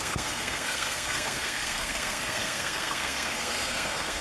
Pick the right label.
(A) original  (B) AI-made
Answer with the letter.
B